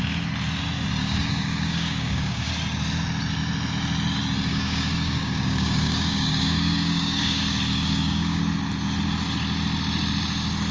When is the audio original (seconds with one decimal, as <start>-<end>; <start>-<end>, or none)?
0.0-1.0; 2.5-4.5; 8.4-10.7